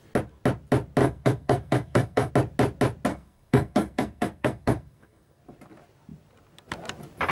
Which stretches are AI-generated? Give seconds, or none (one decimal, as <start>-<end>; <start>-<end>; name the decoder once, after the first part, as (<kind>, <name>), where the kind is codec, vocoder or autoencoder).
1.0-2.3 (codec, SNAC); 3.1-5.4